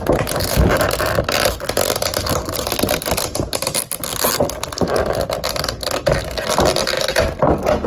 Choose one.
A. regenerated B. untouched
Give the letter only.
B